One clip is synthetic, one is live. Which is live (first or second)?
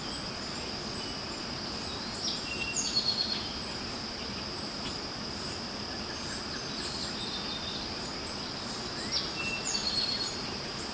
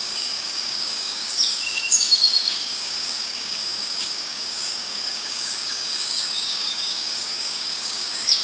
first